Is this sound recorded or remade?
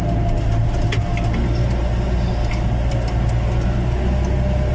recorded